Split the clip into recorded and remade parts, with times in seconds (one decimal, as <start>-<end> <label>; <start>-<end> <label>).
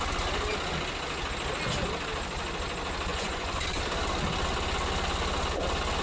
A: 0.0-3.1 recorded; 3.1-3.8 remade; 3.8-6.0 recorded